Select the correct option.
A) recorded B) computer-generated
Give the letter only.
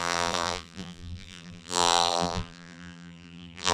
B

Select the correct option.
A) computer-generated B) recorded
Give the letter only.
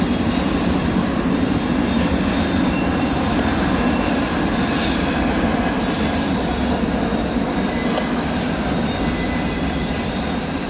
B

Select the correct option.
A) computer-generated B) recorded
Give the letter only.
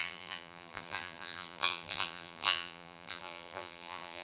A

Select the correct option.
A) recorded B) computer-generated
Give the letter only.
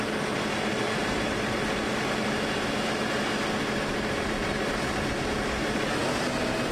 A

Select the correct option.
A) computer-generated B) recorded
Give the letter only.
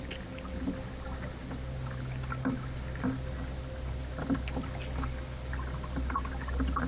B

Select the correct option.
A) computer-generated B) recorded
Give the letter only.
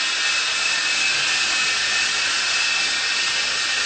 B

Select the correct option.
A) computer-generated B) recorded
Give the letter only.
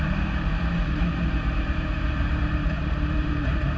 A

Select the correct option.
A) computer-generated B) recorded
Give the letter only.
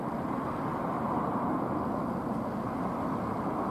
B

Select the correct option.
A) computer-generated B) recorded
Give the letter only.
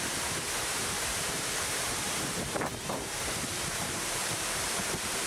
A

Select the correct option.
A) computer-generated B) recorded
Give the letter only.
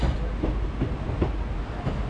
B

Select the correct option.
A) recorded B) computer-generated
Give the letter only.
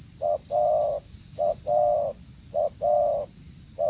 A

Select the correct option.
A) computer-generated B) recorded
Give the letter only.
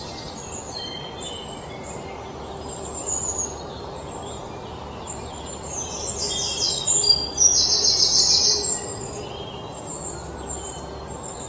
B